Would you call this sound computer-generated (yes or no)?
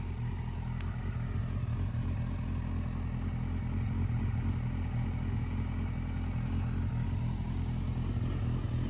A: no